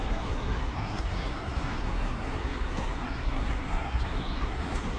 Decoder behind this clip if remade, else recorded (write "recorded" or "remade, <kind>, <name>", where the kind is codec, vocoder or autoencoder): remade, codec, SNAC